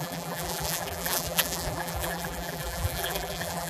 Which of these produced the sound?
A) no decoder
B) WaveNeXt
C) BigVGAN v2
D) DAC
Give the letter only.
C